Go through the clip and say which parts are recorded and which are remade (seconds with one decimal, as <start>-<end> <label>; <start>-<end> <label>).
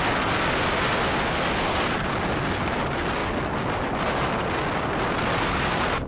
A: 0.0-6.1 recorded